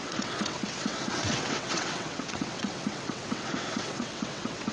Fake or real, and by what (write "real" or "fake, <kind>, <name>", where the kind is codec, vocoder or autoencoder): fake, vocoder, WaveNeXt